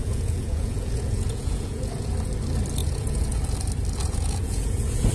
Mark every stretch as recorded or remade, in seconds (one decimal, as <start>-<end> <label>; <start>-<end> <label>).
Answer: 0.0-2.1 remade; 2.1-2.8 recorded; 2.8-3.4 remade; 3.4-4.0 recorded; 4.0-5.1 remade